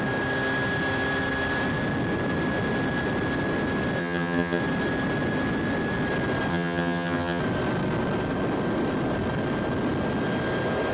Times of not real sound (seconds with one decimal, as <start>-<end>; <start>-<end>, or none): 4.0-4.6; 6.5-7.4